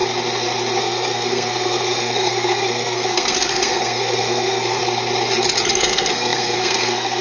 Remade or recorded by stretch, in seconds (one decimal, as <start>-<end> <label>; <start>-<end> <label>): 0.0-0.8 recorded; 0.8-4.8 remade; 4.8-5.7 recorded; 5.7-7.2 remade